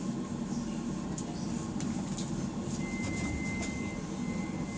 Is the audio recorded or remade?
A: recorded